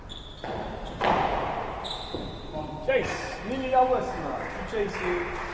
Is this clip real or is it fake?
real